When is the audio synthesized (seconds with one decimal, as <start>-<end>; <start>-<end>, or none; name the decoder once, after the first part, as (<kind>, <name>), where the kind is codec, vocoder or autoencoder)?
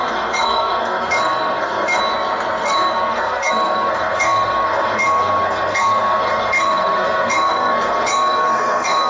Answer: 0.0-2.0 (codec, SNAC); 2.6-9.1